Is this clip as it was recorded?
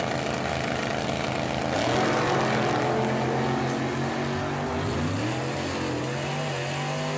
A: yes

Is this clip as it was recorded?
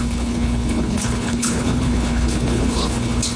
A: no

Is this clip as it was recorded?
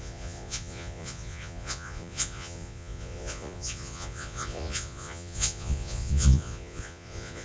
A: no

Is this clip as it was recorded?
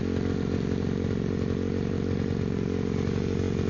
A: yes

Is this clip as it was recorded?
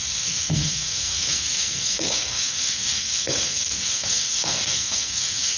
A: no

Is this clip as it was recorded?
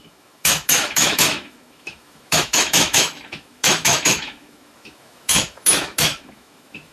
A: no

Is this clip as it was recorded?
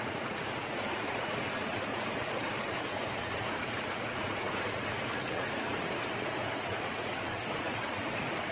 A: no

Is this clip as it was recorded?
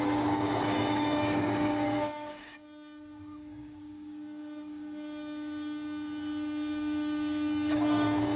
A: no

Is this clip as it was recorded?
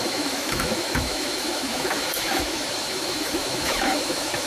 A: no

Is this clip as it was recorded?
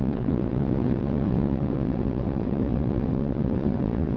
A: no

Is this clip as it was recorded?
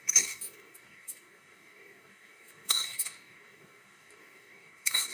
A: no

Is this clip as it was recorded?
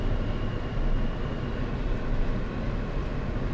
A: yes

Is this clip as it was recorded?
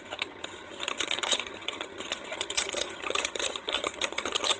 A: no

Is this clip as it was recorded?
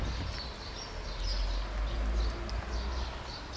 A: yes